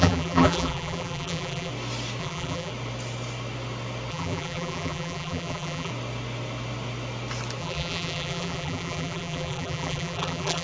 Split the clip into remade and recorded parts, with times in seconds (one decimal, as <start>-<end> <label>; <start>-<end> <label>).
0.0-1.7 remade; 1.7-2.2 recorded; 2.2-2.7 remade; 2.7-4.1 recorded; 4.1-5.9 remade; 5.9-7.6 recorded; 7.6-10.6 remade